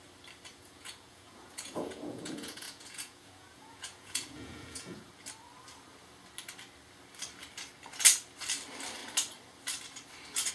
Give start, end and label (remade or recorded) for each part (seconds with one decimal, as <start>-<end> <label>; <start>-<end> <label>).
0.0-0.5 recorded; 0.5-5.1 remade; 5.1-10.5 recorded